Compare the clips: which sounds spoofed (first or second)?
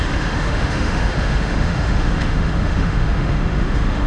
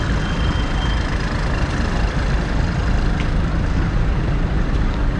first